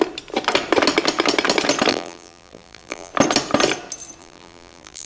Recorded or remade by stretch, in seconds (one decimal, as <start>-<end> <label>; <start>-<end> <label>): 0.0-1.9 recorded; 1.9-3.1 remade; 3.1-4.2 recorded; 4.2-5.1 remade

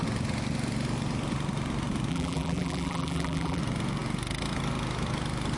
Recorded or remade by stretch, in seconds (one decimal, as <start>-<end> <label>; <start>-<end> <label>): 0.0-2.1 recorded; 2.1-3.6 remade; 3.6-5.6 recorded

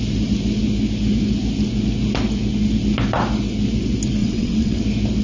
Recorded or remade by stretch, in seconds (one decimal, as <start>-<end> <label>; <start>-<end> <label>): 0.0-4.2 recorded; 4.2-4.8 remade; 4.8-5.2 recorded

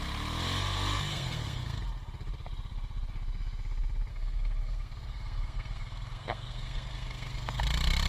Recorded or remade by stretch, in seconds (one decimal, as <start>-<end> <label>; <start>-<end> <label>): 0.0-1.1 recorded; 1.1-1.8 remade; 1.8-4.1 recorded; 4.1-7.6 remade; 7.6-8.1 recorded

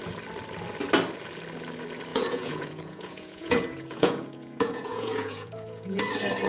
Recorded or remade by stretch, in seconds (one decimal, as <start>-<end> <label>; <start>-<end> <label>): 0.0-2.1 recorded; 2.1-6.0 remade; 6.0-6.5 recorded

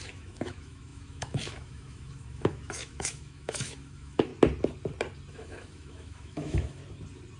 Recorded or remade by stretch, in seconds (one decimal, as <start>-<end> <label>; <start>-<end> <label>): 0.0-4.3 remade; 4.3-5.3 recorded; 5.3-6.8 remade; 6.8-7.4 recorded

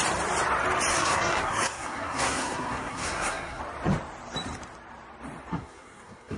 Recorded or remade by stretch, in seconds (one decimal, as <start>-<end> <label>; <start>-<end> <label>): 0.0-0.9 recorded; 0.9-3.6 remade; 3.6-5.5 recorded; 5.5-6.4 remade

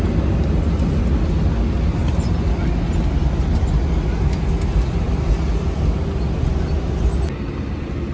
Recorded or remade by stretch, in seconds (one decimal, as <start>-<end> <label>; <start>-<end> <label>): 0.0-8.1 recorded